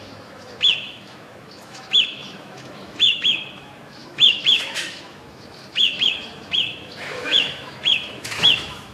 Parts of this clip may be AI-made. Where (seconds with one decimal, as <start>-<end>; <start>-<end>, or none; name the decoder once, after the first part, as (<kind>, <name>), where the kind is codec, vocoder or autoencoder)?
0.0-8.9 (autoencoder, DAC-VAE)